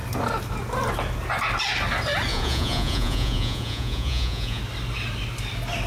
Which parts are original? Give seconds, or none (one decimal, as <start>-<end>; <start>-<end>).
0.0-2.3; 4.6-5.9